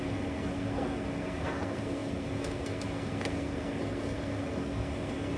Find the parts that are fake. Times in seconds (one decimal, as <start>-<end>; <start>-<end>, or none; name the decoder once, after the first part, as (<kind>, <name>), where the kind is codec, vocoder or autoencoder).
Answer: 0.0-5.4 (codec, SNAC)